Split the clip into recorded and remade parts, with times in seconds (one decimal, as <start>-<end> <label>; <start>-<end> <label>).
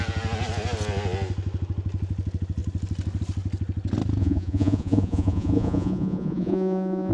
0.0-4.2 recorded; 4.2-7.1 remade